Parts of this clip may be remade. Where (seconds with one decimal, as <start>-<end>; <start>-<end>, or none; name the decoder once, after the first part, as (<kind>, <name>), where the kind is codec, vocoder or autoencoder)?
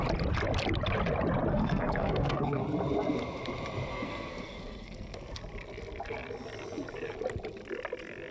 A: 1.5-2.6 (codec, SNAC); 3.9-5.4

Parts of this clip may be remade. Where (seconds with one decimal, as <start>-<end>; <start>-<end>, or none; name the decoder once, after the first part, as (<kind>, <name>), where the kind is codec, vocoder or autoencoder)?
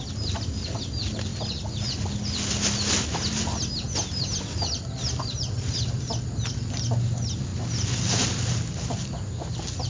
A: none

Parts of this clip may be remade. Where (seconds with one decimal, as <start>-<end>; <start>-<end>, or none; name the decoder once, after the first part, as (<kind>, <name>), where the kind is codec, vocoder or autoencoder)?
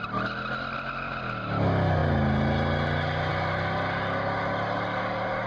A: none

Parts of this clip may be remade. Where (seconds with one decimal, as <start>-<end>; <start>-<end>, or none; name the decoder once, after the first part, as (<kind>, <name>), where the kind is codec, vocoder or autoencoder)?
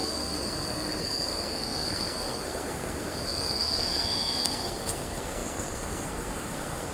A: 0.0-6.9 (codec, SNAC)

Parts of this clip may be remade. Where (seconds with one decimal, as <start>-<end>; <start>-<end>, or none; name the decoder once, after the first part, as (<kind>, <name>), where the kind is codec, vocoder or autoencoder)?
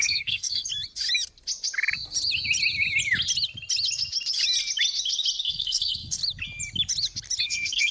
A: 0.0-0.7 (codec, SNAC); 5.4-6.2; 7.4-7.9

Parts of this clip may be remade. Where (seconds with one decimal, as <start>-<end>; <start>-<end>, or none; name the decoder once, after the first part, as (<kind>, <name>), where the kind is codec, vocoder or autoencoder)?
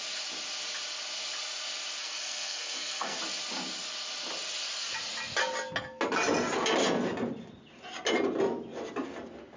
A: 2.0-3.2 (codec, SNAC)